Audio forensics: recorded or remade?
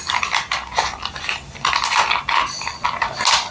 recorded